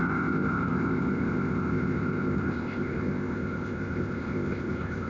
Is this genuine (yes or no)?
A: no